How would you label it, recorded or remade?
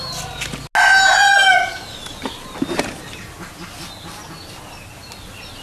recorded